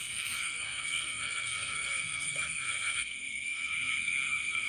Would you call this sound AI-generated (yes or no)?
yes